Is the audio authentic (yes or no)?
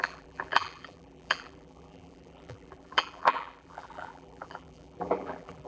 no